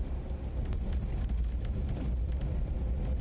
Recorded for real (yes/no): yes